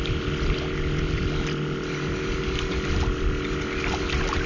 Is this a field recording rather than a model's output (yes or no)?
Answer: yes